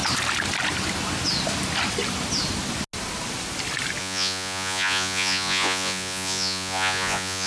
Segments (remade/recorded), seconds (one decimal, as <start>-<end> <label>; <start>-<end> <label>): 0.0-4.0 recorded; 4.0-7.5 remade